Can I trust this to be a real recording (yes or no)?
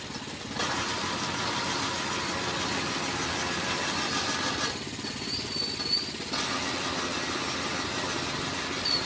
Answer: yes